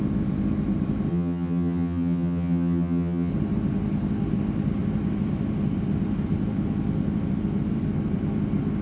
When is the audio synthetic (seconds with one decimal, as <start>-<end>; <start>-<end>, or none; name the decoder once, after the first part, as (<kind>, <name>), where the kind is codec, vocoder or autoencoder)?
1.1-3.3 (vocoder, HiFi-GAN)